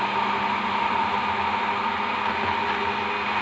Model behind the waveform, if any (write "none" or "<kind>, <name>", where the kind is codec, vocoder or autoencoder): none